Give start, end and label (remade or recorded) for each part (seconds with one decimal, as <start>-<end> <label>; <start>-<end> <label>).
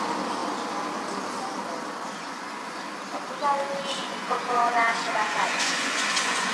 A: 0.0-2.2 recorded; 2.2-2.8 remade; 2.8-4.0 recorded; 4.0-6.5 remade